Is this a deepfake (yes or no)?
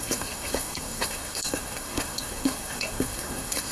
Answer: yes